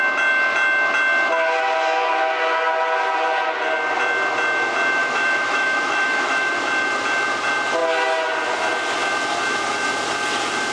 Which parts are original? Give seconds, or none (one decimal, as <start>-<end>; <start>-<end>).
0.0-5.0; 6.5-10.7